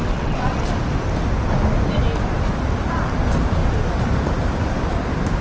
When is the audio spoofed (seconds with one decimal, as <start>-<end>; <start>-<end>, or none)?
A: 0.0-0.6